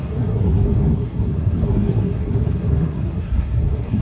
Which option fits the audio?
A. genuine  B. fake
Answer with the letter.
B